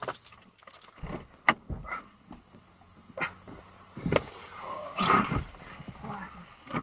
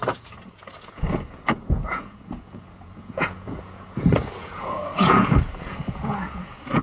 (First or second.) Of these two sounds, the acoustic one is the first